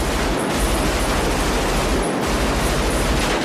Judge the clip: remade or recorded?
recorded